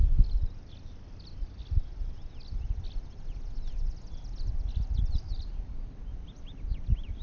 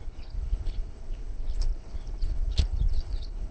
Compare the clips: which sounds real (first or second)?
first